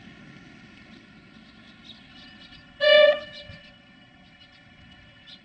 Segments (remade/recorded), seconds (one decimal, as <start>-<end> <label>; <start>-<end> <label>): 0.0-2.1 recorded; 2.1-5.4 remade